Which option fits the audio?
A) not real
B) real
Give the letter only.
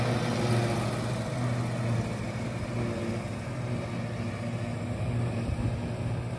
B